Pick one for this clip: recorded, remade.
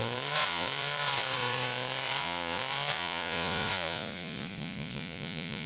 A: remade